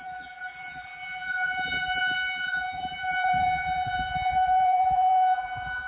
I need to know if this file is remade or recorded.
remade